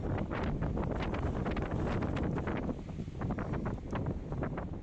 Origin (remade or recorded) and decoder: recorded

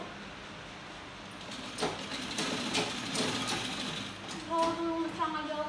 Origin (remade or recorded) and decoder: recorded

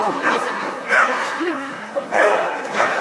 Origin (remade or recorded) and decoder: remade, codec, SNAC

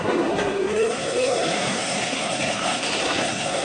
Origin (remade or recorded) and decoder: remade, codec, SNAC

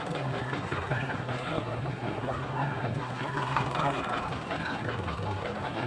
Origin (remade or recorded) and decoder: remade, codec, SNAC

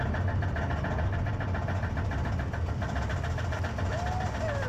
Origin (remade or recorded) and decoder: recorded